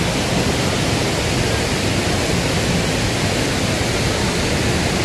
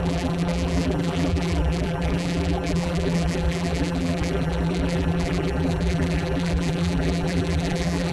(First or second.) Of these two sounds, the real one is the first